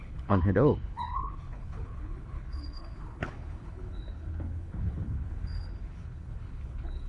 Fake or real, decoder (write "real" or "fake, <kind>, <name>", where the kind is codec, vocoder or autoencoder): fake, codec, HILCodec